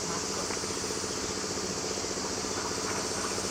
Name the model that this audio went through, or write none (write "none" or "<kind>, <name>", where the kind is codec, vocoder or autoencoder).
none